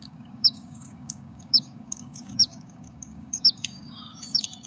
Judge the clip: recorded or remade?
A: remade